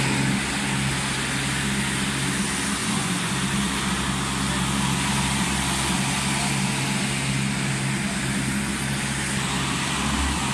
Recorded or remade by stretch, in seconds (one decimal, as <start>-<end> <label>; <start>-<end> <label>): 0.0-2.8 recorded; 2.8-3.3 remade; 3.3-10.5 recorded